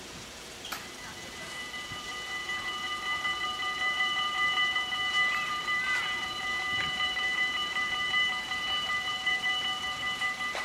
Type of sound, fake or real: fake